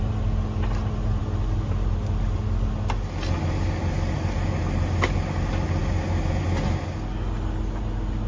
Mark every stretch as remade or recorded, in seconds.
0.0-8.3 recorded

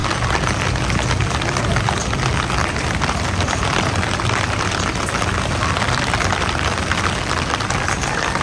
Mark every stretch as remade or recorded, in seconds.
0.0-8.4 recorded

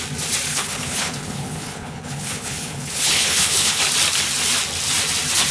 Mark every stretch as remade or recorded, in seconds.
0.0-0.5 recorded; 0.5-3.8 remade; 3.8-5.5 recorded

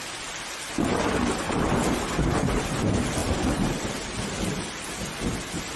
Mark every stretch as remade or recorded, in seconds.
0.0-5.8 recorded

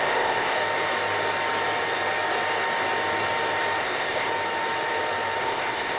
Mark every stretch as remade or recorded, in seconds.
0.0-0.6 remade; 0.6-3.8 recorded; 3.8-4.3 remade; 4.3-5.4 recorded; 5.4-6.0 remade

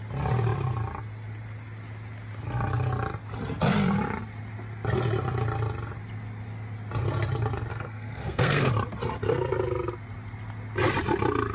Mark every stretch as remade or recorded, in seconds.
0.0-7.7 recorded; 7.7-8.7 remade; 8.7-11.5 recorded